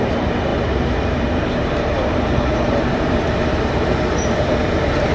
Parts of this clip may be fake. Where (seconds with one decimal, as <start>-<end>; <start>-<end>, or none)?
0.0-5.1